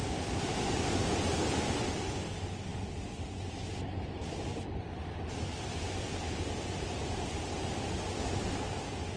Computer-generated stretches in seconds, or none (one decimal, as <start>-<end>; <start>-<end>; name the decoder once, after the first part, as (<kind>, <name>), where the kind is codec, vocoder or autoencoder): none